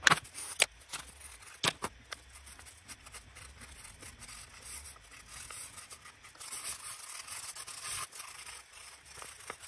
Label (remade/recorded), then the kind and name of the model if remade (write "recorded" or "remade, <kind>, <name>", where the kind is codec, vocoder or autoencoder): recorded